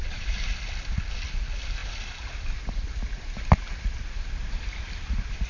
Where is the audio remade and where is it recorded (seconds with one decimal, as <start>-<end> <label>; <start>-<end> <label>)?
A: 0.0-5.5 recorded